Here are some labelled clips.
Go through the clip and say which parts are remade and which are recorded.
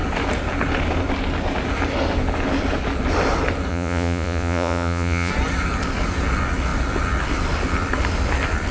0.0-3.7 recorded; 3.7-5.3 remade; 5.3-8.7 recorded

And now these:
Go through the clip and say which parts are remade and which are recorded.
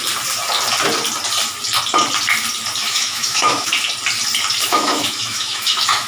0.0-2.8 recorded; 2.8-3.7 remade; 3.7-4.7 recorded; 4.7-6.1 remade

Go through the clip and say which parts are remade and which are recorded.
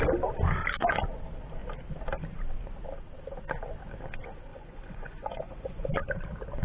0.0-4.5 recorded; 4.5-5.9 remade; 5.9-6.6 recorded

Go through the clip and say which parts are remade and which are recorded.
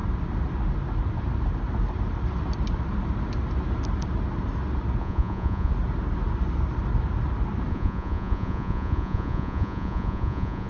0.0-5.0 recorded; 5.0-5.7 remade; 5.7-7.7 recorded; 7.7-10.7 remade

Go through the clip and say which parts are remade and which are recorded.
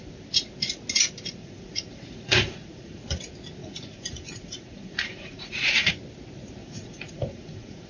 0.0-1.4 recorded; 1.4-3.0 remade; 3.0-3.6 recorded; 3.6-5.9 remade; 5.9-6.6 recorded; 6.6-7.9 remade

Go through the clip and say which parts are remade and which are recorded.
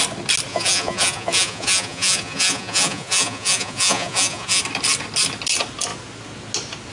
0.0-0.5 recorded; 0.5-4.6 remade; 4.6-6.9 recorded